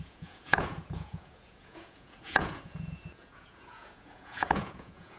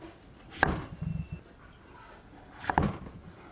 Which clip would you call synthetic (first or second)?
first